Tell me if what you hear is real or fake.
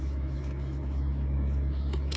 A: fake